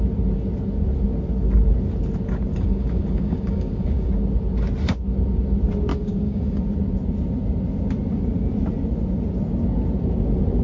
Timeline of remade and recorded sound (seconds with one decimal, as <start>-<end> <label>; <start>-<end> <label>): 0.0-2.5 recorded; 2.5-4.1 remade; 4.1-5.9 recorded; 5.9-6.6 remade; 6.6-10.6 recorded